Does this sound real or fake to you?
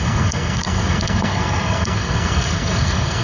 fake